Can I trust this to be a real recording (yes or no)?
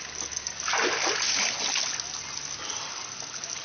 yes